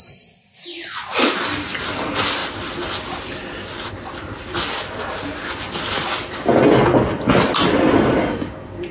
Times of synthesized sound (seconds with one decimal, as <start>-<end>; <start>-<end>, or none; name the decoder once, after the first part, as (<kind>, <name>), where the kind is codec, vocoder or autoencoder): none